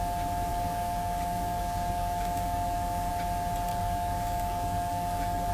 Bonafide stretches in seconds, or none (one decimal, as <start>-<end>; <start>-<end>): 0.0-0.5; 3.1-3.7